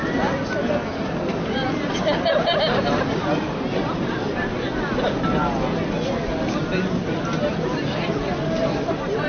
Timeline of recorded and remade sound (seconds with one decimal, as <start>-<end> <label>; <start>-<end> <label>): 0.0-9.3 recorded